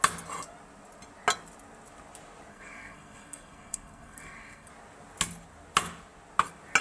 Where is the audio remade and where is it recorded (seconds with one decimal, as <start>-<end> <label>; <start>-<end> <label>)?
0.0-2.5 recorded; 2.5-4.7 remade; 4.7-6.8 recorded